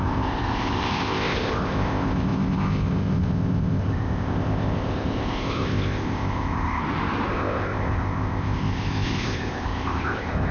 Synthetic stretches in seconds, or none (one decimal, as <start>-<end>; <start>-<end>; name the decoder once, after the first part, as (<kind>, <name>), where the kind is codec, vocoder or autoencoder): 0.0-6.8 (codec, ZipCodec); 7.3-10.5